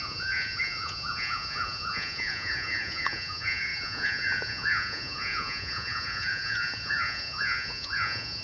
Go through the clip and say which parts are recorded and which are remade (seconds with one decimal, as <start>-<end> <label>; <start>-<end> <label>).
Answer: 0.0-8.4 remade